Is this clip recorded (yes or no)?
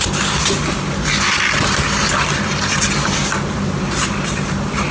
yes